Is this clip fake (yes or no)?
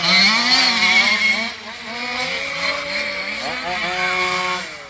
no